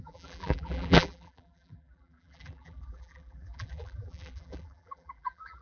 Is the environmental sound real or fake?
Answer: fake